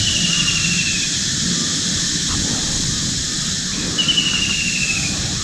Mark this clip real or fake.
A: real